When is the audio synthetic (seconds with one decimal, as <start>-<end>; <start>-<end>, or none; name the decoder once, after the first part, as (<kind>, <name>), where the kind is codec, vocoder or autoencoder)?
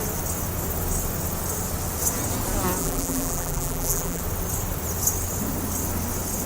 2.8-4.2 (vocoder, BigVGAN v2)